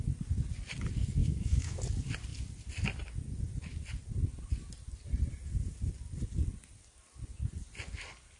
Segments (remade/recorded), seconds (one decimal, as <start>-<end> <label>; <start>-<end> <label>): 0.0-1.2 recorded; 1.2-1.8 remade; 1.8-8.4 recorded